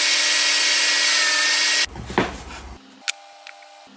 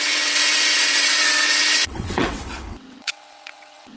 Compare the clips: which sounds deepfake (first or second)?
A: second